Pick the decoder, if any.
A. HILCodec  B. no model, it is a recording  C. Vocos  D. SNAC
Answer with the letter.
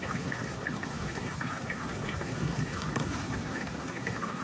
D